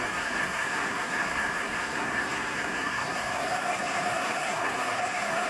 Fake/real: fake